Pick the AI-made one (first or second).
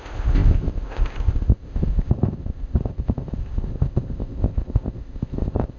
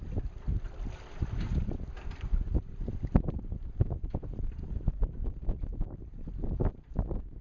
first